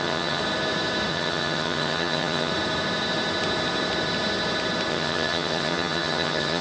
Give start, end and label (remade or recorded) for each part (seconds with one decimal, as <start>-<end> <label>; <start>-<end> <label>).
0.0-0.4 remade; 0.4-1.1 recorded; 1.1-2.5 remade; 2.5-4.9 recorded; 4.9-6.6 remade